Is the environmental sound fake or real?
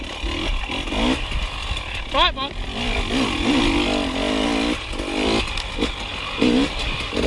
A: real